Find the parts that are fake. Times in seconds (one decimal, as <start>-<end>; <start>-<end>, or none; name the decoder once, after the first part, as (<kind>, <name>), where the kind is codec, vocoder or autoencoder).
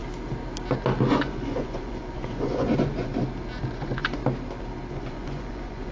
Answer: 1.1-3.1 (vocoder, Vocos); 3.7-4.2; 4.9-5.9